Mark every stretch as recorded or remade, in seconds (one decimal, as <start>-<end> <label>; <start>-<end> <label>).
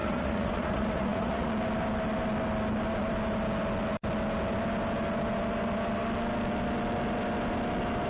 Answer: 0.0-1.5 remade; 1.5-8.1 recorded